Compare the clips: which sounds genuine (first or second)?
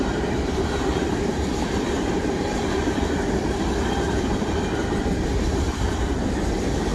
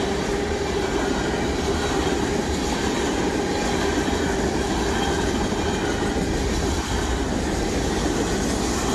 second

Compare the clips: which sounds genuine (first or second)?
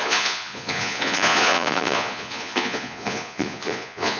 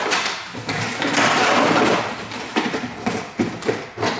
second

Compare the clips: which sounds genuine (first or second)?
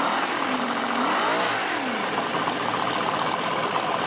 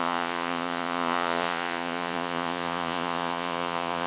first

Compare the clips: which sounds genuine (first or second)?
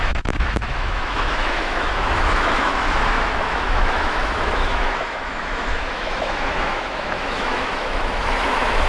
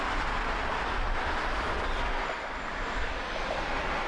second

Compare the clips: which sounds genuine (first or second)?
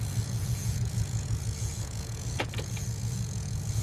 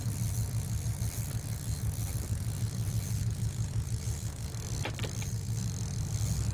second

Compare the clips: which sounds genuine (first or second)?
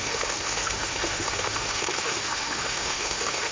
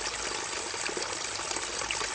second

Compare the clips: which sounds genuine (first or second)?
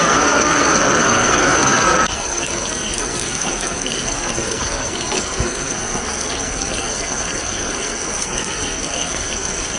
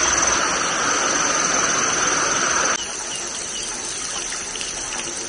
second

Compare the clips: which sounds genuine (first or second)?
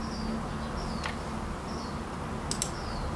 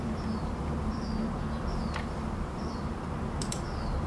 first